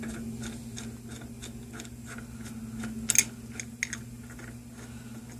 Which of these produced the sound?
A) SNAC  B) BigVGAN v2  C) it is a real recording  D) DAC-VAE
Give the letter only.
C